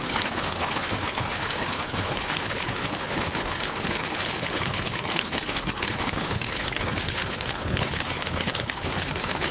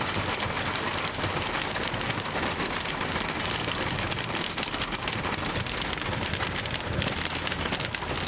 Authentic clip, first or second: second